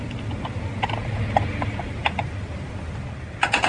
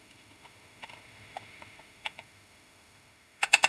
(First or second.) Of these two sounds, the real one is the first